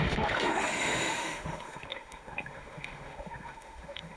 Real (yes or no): no